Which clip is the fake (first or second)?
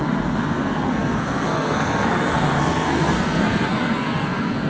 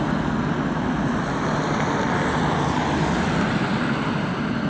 first